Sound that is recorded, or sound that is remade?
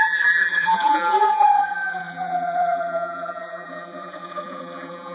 remade